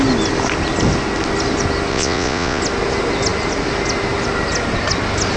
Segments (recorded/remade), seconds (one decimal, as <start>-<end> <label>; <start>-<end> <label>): 0.0-1.9 recorded; 1.9-2.6 remade; 2.6-5.4 recorded